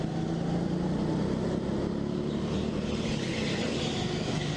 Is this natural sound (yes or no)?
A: yes